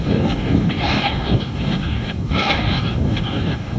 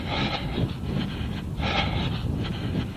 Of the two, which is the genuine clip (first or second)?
second